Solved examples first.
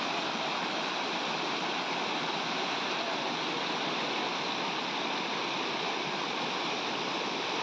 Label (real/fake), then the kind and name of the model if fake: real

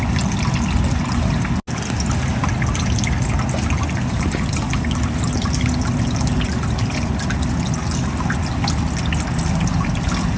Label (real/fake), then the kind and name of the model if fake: real